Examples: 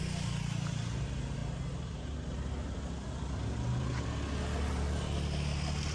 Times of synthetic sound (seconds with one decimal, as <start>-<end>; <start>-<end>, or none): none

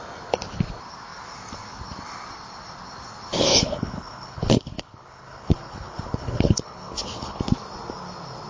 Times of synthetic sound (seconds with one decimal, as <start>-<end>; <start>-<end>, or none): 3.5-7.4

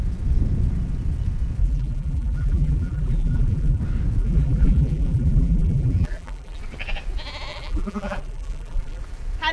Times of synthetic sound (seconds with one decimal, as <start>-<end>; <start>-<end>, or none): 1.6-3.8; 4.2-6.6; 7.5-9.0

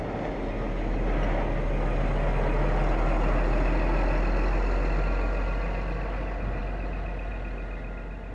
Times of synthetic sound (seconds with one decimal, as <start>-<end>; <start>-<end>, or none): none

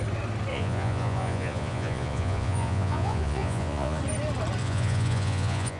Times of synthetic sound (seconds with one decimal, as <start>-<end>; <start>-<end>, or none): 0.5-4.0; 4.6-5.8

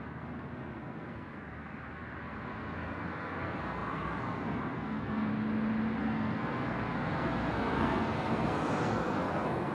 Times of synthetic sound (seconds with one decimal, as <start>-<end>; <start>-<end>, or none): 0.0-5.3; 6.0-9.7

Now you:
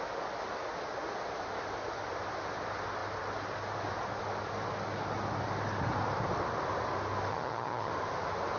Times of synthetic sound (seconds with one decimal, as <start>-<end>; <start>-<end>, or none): 7.3-7.9